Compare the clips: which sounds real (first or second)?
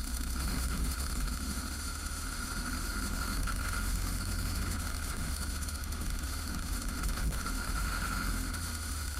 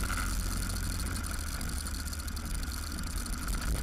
second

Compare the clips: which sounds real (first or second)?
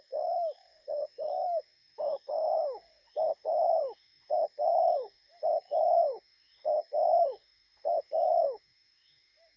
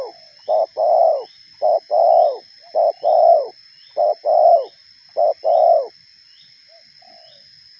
second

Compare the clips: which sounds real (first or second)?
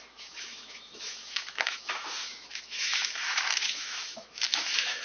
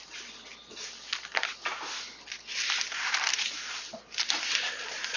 second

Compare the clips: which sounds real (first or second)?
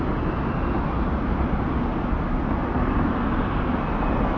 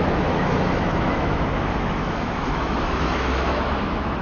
first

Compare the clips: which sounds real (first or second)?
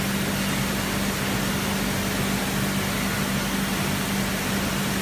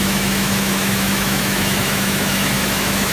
first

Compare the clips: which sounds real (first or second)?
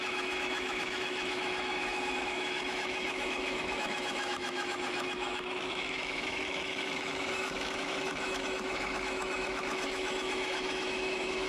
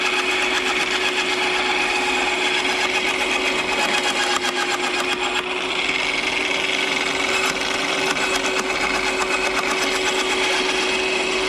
second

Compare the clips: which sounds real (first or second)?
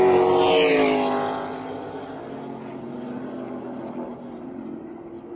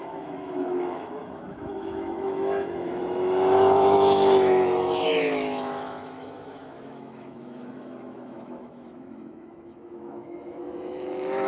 first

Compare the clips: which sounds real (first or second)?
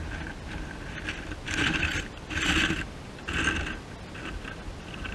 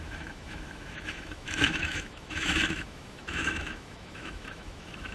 first